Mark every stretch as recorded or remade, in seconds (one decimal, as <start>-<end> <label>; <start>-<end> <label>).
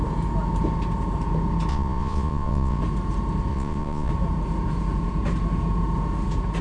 0.0-1.7 recorded; 1.7-2.8 remade; 2.8-3.5 recorded; 3.5-4.1 remade; 4.1-6.6 recorded